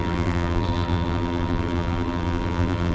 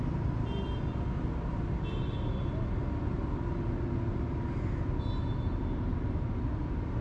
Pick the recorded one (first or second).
second